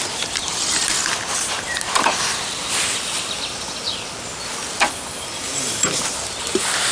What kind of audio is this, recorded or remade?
recorded